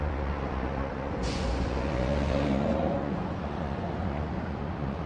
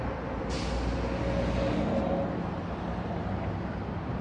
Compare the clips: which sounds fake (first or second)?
first